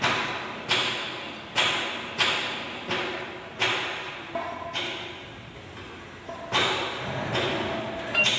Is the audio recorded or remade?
recorded